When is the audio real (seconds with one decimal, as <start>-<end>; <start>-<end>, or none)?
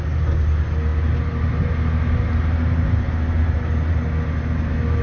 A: 0.0-5.0